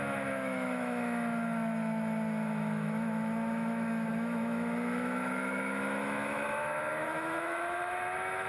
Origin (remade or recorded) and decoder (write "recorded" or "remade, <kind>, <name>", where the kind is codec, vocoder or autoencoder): remade, autoencoder, DAC-VAE